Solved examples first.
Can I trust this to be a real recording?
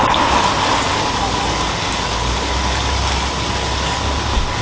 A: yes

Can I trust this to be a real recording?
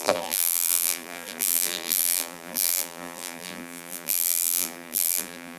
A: no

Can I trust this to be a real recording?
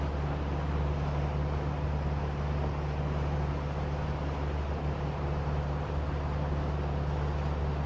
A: yes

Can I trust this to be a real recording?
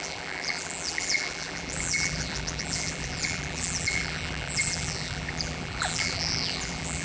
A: no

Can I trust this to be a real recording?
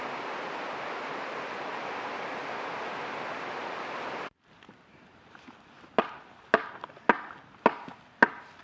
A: yes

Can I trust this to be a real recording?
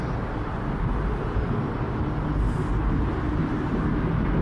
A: yes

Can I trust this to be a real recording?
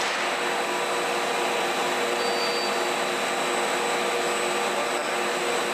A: yes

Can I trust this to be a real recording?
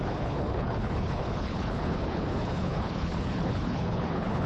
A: no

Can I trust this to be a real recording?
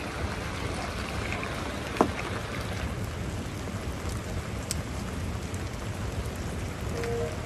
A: yes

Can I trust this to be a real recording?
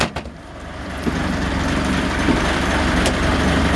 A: yes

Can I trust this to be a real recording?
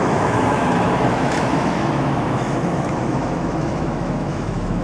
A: no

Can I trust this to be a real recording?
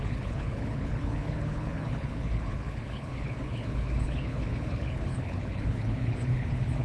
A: no